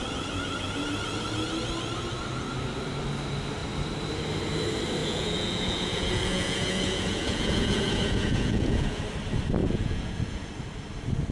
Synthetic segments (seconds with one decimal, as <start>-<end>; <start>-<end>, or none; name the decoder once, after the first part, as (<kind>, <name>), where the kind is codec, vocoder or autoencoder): 5.0-9.0 (vocoder, Vocos); 9.6-10.5